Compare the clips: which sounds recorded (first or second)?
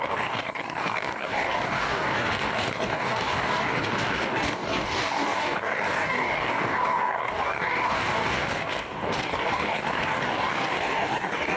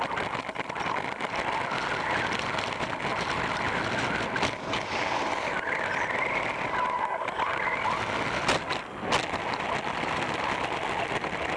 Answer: second